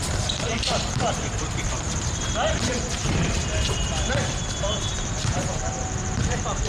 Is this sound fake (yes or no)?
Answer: yes